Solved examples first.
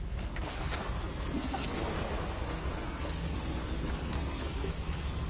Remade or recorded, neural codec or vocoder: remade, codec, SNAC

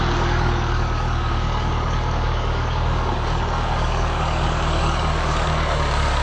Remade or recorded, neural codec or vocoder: remade, codec, DAC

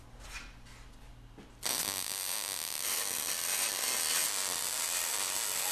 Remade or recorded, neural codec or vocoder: recorded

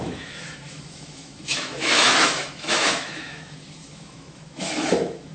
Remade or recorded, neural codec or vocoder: remade, autoencoder, DAC-VAE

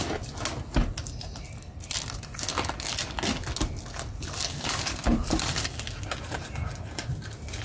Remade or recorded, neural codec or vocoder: recorded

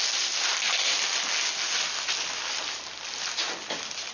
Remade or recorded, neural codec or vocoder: recorded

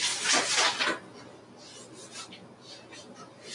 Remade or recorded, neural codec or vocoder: recorded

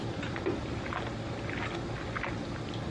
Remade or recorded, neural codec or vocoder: recorded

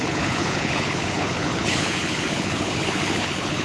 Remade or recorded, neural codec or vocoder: remade, codec, HILCodec